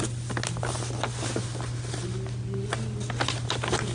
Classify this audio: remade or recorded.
recorded